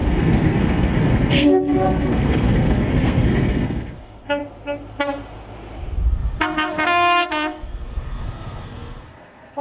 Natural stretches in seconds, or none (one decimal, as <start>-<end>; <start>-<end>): 4.4-6.4